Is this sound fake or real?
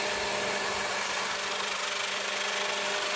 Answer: real